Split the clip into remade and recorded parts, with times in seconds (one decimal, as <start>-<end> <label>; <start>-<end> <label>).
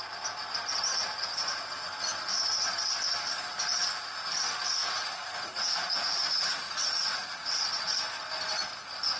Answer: 0.0-4.8 recorded; 4.8-8.0 remade; 8.0-9.2 recorded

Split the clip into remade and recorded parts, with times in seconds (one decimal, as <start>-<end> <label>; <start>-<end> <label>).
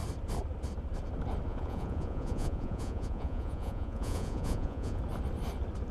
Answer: 0.0-1.5 recorded; 1.5-5.0 remade; 5.0-5.9 recorded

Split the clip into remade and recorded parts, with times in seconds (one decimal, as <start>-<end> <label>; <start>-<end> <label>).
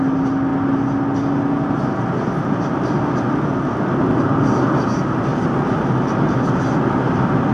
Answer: 0.0-7.5 recorded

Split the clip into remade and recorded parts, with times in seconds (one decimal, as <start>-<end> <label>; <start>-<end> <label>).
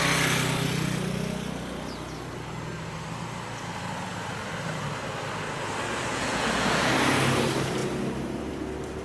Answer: 0.0-6.1 recorded; 6.1-6.9 remade; 6.9-9.0 recorded